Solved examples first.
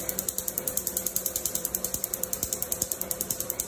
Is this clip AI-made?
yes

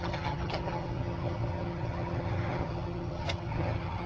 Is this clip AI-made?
yes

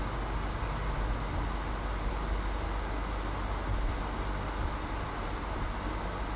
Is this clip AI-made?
no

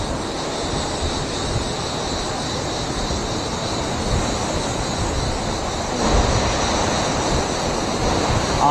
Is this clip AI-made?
no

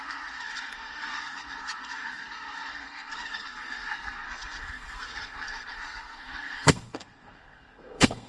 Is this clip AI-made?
yes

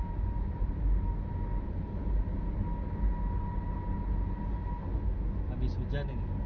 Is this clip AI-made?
no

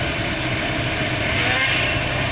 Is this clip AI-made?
yes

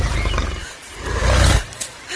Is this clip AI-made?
no